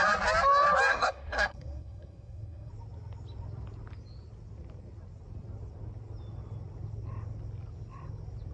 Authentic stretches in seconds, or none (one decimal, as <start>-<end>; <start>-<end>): 0.0-0.9; 2.7-8.5